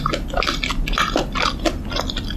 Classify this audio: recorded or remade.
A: recorded